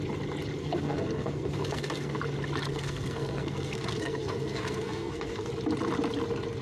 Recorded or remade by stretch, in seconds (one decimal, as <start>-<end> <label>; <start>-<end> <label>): 0.0-0.6 recorded; 0.6-2.2 remade; 2.2-2.7 recorded; 2.7-5.5 remade; 5.5-6.6 recorded